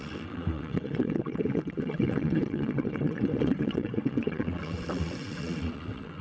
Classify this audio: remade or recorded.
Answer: remade